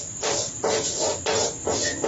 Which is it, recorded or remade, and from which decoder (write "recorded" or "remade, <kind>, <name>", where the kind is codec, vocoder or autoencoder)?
recorded